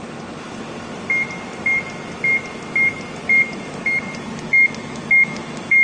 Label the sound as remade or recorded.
recorded